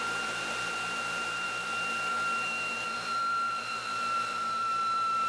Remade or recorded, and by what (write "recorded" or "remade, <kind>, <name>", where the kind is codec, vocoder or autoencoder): remade, vocoder, BigVGAN v2